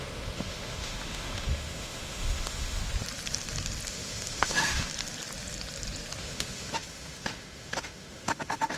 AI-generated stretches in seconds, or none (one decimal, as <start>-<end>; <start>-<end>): 0.0-2.8; 3.9-4.9; 6.2-8.8